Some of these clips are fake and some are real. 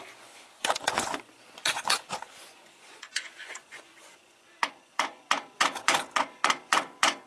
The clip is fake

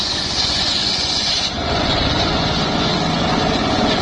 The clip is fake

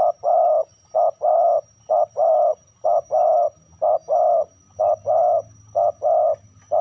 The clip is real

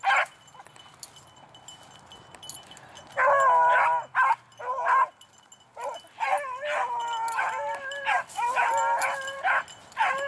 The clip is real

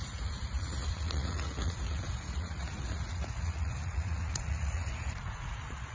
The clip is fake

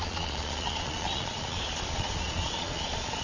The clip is fake